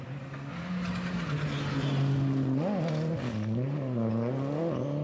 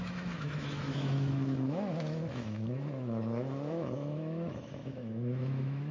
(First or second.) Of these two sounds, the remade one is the second